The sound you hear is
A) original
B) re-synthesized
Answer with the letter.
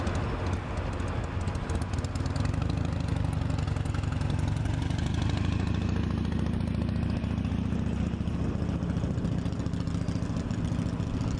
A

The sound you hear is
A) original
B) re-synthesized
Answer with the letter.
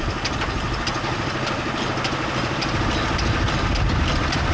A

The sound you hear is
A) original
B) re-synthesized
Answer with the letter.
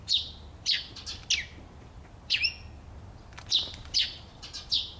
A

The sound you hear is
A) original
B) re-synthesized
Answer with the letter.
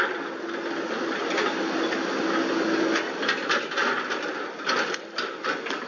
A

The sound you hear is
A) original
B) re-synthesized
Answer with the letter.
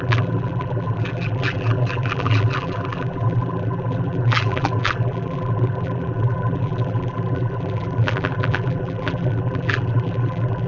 B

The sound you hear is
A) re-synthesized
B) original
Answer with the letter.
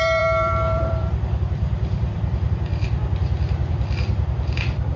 A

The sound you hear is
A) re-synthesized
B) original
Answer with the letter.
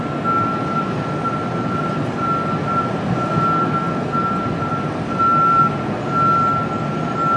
B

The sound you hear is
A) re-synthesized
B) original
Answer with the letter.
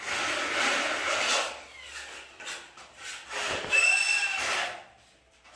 B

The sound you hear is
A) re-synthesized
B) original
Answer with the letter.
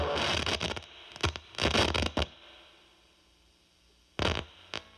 B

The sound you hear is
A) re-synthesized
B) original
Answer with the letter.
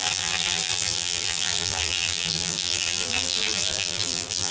A